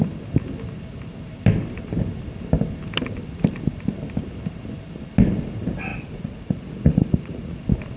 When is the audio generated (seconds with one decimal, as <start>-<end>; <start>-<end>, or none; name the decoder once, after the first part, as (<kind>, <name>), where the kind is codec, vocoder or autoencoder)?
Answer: 5.9-7.6 (vocoder, Vocos)